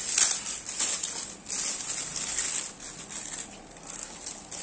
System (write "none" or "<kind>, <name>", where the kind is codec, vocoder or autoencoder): none